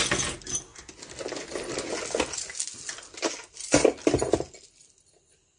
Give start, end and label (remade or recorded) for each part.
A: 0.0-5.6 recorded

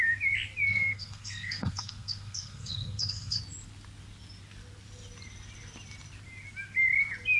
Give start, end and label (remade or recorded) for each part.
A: 0.0-0.7 recorded; 0.7-3.4 remade; 3.4-7.4 recorded

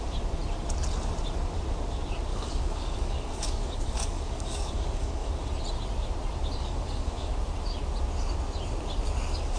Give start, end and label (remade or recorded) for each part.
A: 0.0-2.3 recorded; 2.3-5.3 remade; 5.3-6.6 recorded; 6.6-7.3 remade; 7.3-9.6 recorded